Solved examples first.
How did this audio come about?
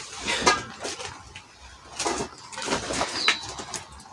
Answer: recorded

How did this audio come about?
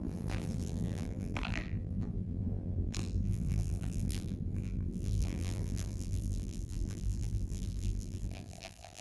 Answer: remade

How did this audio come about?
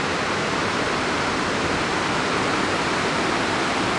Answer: recorded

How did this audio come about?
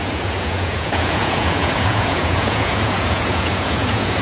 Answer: remade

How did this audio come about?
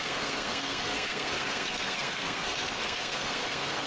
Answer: remade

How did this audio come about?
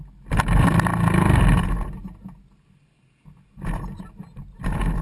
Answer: recorded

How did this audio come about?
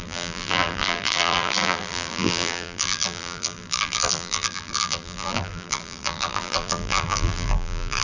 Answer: remade